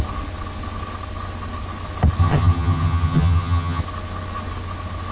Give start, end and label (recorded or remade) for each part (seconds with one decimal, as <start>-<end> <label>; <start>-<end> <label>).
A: 0.0-2.2 recorded; 2.2-3.8 remade; 3.8-5.1 recorded